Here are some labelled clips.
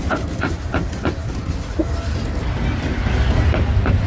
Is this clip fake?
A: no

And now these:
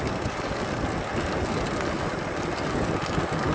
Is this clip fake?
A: no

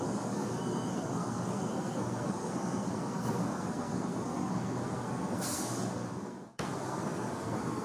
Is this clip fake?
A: yes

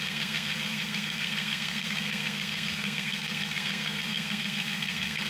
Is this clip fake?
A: yes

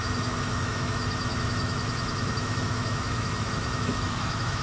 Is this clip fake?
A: yes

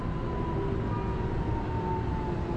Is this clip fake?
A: no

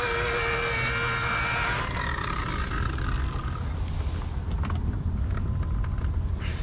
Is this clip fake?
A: no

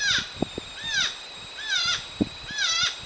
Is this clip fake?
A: no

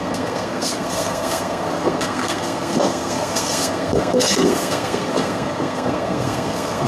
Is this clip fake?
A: yes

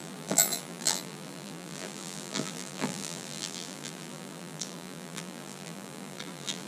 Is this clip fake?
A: yes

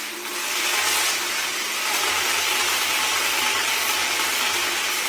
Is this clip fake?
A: no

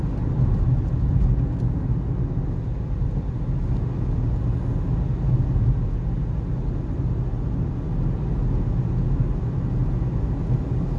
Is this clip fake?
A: no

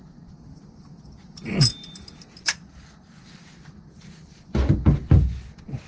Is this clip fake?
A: no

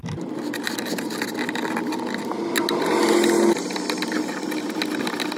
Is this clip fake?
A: no